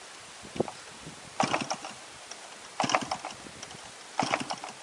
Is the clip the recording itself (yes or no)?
yes